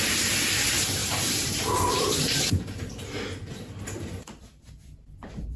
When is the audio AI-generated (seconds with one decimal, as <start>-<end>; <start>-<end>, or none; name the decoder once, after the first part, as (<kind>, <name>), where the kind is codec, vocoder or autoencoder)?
1.0-4.4 (vocoder, BigVGAN v2)